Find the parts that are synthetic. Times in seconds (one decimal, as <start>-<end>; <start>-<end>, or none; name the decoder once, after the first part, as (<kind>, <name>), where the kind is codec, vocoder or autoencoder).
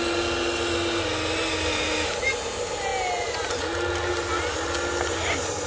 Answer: none